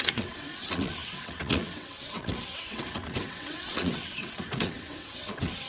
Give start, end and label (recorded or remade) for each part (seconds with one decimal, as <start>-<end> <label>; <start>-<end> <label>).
0.0-5.7 remade